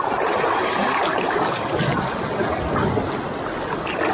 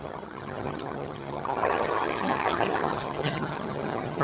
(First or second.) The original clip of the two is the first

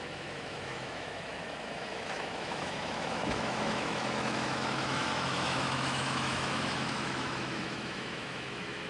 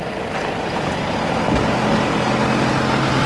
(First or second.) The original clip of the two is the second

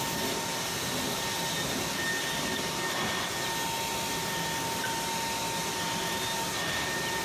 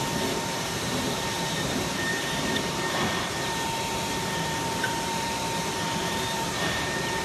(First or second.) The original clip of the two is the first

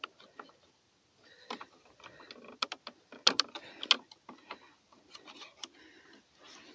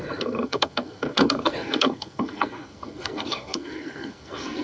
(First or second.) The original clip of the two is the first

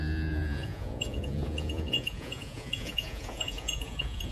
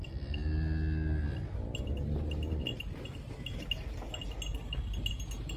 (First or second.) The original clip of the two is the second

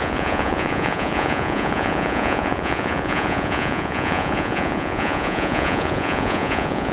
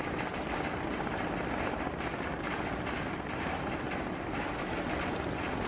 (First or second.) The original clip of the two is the second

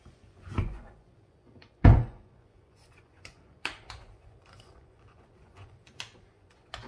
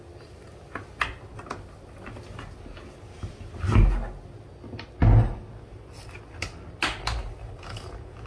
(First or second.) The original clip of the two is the second